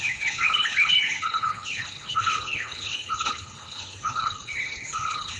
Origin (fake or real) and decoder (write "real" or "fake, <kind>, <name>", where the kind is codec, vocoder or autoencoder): fake, codec, HILCodec